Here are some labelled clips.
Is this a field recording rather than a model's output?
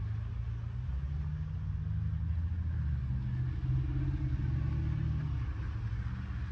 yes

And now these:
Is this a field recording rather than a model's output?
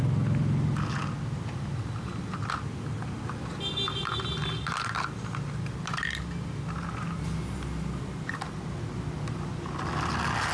yes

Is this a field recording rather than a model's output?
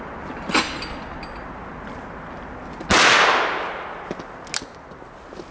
yes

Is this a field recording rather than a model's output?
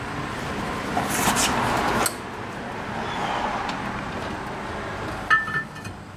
yes